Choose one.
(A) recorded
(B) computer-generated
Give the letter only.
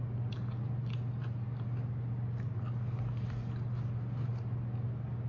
A